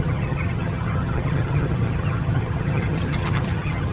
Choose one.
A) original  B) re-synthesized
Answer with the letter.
B